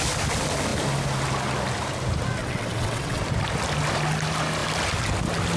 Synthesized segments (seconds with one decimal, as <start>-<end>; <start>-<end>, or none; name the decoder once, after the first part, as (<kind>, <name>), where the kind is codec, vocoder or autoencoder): 2.4-3.2 (vocoder, WaveNeXt)